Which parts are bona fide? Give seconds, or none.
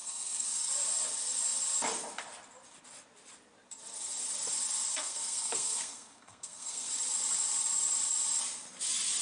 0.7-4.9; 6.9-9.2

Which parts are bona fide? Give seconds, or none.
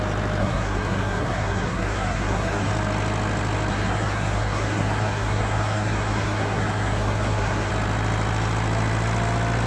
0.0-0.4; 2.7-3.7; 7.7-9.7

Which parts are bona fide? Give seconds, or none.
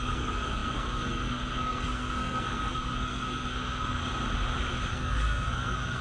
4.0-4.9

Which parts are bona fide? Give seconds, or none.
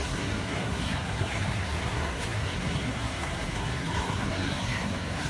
none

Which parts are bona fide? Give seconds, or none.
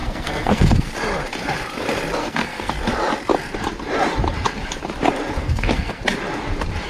0.9-2.2; 2.7-5.4; 6.0-6.9